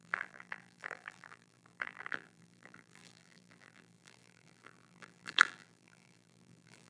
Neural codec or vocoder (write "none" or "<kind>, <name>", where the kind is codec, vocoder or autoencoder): vocoder, BigVGAN v2